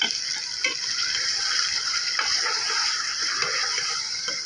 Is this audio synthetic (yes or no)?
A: yes